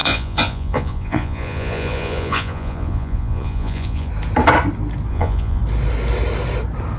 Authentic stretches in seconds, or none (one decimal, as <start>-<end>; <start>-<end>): 4.1-5.1; 5.6-7.0